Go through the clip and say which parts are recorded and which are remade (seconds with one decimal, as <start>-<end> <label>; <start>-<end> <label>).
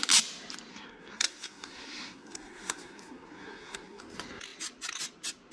0.0-0.7 recorded; 0.7-4.0 remade; 4.0-5.5 recorded